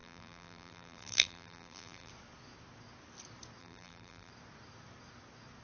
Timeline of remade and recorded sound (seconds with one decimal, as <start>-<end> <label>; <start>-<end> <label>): 0.0-2.1 remade; 2.1-3.6 recorded; 3.6-4.3 remade; 4.3-5.6 recorded